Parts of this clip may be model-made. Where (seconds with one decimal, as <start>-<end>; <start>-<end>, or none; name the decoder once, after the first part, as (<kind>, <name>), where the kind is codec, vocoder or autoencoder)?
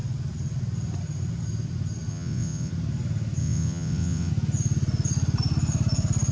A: 2.1-2.7 (vocoder, WaveNeXt); 3.4-4.3